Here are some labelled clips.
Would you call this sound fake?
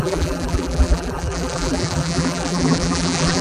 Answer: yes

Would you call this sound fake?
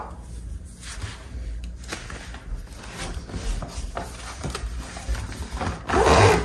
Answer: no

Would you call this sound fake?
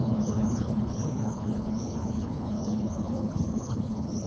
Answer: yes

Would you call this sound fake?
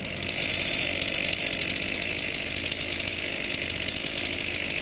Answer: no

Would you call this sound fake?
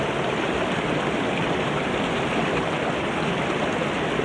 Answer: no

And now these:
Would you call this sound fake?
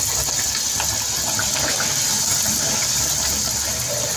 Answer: no